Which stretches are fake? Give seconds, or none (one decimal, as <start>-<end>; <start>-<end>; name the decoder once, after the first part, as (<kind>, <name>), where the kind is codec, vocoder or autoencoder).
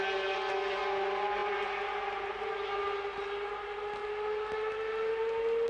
none